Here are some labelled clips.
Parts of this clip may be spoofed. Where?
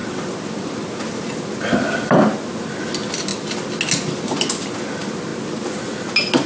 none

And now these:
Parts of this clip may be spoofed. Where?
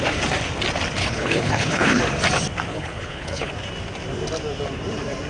1.0-2.0 (codec, HILCodec); 2.7-3.5